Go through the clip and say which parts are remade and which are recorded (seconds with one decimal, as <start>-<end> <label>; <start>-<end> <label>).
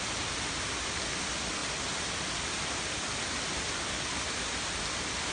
0.0-5.3 recorded